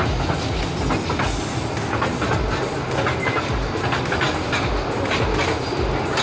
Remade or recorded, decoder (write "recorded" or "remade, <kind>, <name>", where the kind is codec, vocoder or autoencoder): recorded